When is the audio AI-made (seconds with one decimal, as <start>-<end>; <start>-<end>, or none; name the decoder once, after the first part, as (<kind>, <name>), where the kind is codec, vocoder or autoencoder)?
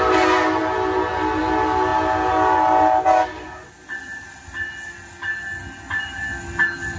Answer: none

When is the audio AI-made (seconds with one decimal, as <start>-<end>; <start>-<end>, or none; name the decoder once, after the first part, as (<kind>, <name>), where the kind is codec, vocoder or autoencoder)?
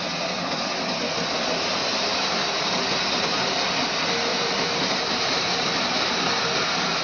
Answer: 1.8-3.0 (vocoder, BigVGAN v2); 4.3-5.4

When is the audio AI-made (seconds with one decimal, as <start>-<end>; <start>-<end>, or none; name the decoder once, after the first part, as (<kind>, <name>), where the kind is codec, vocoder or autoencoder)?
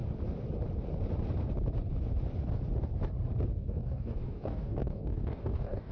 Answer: 3.5-5.9 (codec, DAC)